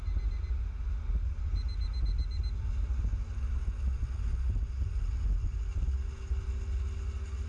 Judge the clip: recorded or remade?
recorded